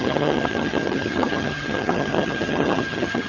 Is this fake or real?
fake